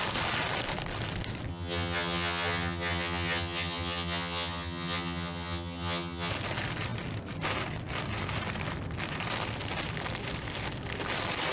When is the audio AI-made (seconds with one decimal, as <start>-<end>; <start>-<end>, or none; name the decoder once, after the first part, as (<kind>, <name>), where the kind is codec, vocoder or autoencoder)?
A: 1.5-6.3 (vocoder, HiFi-GAN)